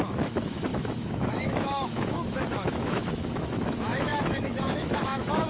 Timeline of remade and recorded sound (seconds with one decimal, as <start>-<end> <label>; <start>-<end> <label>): 0.0-5.5 remade